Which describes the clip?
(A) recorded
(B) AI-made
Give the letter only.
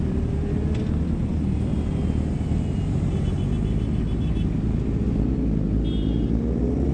A